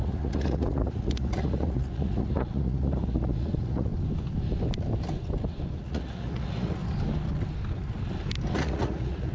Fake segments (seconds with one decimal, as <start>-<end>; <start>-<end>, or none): 0.0-3.9; 5.8-6.8; 8.5-9.3